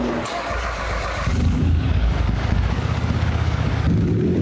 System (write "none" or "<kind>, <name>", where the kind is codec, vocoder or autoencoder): codec, DAC